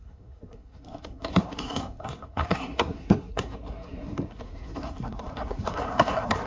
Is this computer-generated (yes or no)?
yes